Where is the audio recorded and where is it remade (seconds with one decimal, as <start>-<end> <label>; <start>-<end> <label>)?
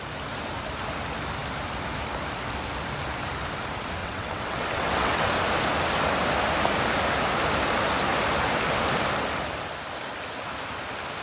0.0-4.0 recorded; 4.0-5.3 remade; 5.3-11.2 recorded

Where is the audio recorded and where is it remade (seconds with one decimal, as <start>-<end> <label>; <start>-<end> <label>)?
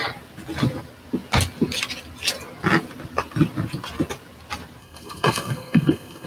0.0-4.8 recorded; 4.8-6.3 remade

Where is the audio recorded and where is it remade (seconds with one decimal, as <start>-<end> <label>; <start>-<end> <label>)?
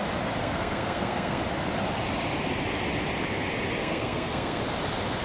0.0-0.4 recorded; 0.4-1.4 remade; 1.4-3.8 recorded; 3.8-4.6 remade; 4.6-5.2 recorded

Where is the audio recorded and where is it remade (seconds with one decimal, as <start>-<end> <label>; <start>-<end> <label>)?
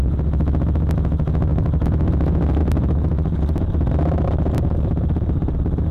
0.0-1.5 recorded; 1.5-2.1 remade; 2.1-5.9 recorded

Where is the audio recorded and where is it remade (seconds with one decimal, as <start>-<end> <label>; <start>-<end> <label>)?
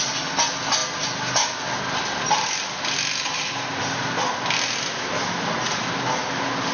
0.0-6.7 recorded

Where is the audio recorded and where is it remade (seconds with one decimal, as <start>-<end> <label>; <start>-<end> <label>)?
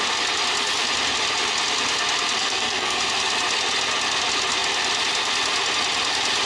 0.0-2.4 recorded; 2.4-3.1 remade; 3.1-6.5 recorded